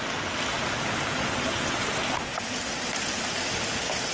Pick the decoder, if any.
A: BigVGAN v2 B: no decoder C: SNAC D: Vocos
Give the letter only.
B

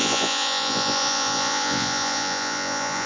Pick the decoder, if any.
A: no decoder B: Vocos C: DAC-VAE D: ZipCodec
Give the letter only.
B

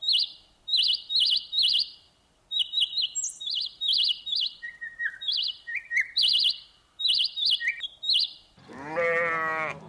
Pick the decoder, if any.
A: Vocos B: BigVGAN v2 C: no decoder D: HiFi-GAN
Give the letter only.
C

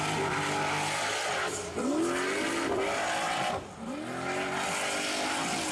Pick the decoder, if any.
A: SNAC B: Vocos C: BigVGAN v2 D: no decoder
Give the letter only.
D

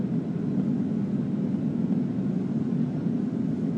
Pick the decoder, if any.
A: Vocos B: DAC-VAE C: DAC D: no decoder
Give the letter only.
D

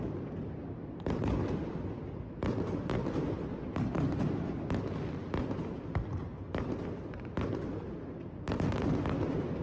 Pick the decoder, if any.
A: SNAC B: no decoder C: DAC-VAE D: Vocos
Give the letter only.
B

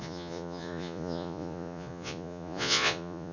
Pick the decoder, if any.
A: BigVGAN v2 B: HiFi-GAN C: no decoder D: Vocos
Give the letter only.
D